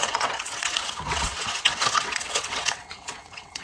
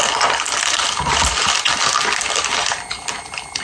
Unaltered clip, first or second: second